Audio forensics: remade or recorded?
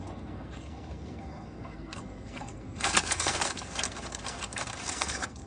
remade